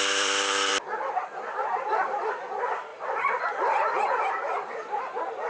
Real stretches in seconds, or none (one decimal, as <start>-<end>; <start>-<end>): 0.7-1.8